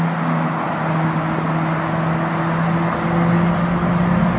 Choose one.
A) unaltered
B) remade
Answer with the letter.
A